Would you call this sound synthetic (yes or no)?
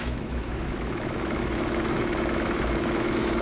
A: yes